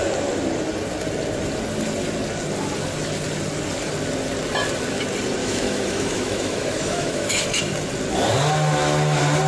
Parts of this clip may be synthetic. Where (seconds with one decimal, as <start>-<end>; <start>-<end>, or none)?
5.4-7.6